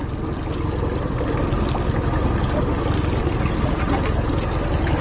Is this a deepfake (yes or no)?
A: no